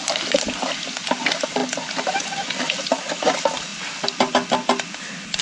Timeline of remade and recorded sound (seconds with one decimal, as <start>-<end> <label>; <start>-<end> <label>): 0.0-5.4 recorded